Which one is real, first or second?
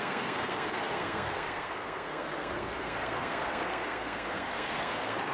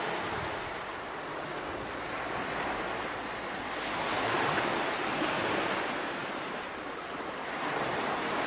second